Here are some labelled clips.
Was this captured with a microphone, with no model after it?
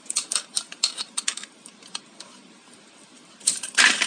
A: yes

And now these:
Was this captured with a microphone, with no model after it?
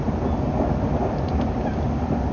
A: yes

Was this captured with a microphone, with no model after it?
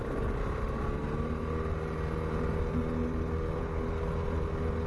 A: yes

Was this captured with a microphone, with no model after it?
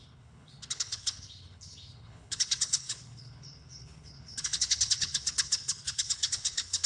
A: no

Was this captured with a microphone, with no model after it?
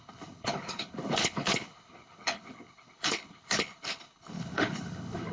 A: no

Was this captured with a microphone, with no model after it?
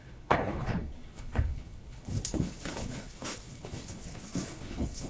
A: no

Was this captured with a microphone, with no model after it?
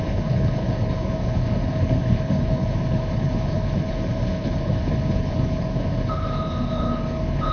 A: no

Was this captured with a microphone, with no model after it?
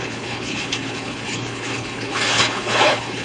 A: no